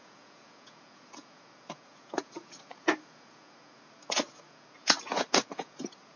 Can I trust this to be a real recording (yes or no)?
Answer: no